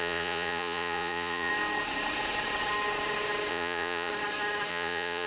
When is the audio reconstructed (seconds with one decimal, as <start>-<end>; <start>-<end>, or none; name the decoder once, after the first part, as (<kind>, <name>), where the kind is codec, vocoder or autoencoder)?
0.0-1.5 (vocoder, Vocos); 3.5-4.1; 4.7-5.3